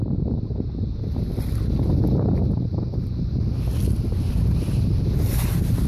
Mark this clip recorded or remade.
recorded